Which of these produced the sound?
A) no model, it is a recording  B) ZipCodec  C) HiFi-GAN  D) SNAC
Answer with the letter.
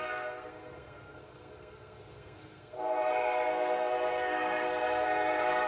D